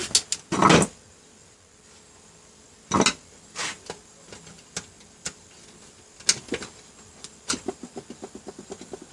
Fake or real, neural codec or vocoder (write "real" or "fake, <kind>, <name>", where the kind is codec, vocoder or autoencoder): real